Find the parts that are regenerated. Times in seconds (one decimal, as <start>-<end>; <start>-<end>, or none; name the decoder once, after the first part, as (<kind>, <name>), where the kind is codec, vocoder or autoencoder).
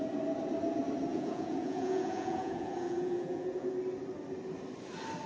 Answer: 1.1-3.7 (vocoder, Vocos)